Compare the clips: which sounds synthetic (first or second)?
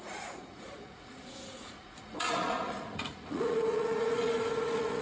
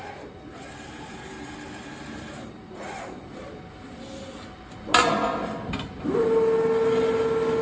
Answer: first